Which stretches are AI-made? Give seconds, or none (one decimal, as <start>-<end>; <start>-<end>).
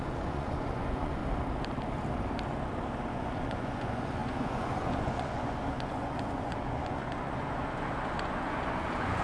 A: 0.0-1.2; 3.1-9.2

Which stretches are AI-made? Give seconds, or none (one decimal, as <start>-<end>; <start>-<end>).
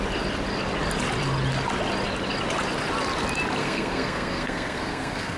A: 3.6-5.4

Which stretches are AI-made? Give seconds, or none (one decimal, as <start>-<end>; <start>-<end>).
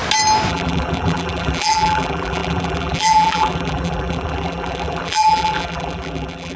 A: 0.5-6.6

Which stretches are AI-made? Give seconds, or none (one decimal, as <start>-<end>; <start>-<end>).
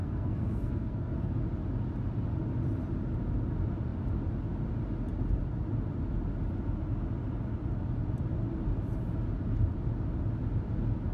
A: 0.0-1.3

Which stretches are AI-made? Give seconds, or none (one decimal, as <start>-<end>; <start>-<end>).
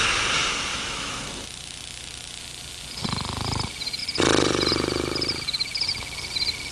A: 0.7-2.4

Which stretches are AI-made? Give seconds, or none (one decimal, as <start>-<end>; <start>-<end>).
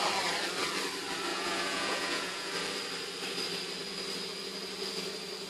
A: 1.3-2.5